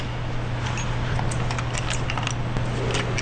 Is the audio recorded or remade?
recorded